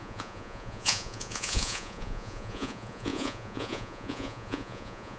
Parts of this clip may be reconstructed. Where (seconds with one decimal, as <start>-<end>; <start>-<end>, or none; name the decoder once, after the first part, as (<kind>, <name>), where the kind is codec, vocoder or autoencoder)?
0.0-5.2 (vocoder, Vocos)